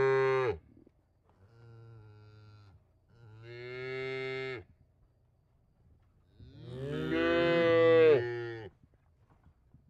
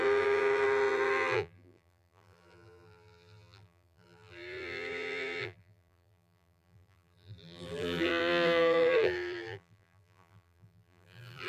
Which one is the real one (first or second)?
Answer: first